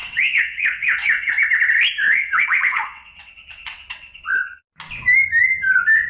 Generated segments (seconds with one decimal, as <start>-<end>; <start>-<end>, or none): 0.0-1.3; 2.0-4.2